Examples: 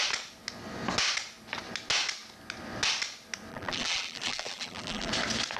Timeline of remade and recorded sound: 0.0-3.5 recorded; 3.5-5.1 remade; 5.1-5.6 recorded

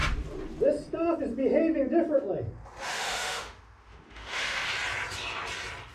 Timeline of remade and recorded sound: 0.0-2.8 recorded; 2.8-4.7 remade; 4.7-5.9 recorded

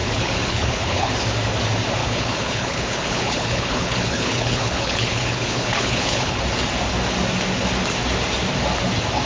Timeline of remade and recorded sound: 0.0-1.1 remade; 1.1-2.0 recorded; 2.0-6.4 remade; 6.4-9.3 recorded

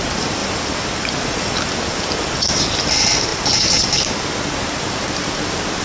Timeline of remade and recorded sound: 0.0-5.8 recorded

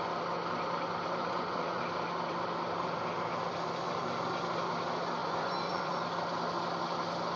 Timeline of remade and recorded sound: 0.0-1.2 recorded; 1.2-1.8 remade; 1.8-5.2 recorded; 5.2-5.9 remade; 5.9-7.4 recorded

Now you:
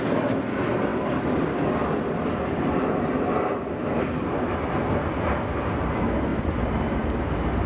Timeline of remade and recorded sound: 0.0-6.3 recorded; 6.3-7.0 remade; 7.0-7.7 recorded